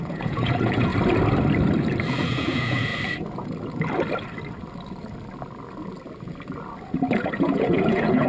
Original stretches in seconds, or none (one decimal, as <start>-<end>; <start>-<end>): 0.9-2.1; 2.9-7.1